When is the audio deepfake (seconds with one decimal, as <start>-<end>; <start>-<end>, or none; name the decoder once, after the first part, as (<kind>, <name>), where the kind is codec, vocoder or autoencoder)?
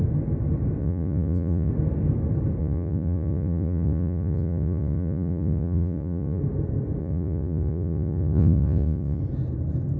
0.8-1.7 (vocoder, Vocos); 2.6-6.4; 7.0-9.2